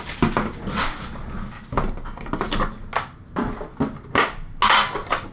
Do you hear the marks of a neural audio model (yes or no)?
no